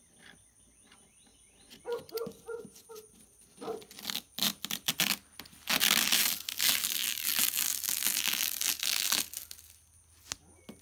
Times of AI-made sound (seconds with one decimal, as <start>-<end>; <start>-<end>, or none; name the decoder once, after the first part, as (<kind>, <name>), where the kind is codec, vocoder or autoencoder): none